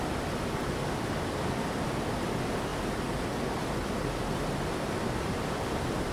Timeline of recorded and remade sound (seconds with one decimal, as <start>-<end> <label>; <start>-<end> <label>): 0.0-6.1 recorded